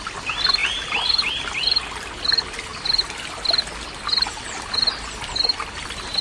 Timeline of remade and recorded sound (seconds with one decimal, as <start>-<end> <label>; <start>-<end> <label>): 0.0-6.2 recorded